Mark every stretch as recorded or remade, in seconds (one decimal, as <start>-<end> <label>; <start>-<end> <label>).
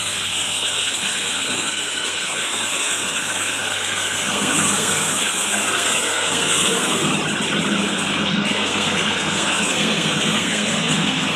0.0-7.1 remade; 7.1-7.7 recorded; 7.7-11.4 remade